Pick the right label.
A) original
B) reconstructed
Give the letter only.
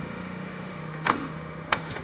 B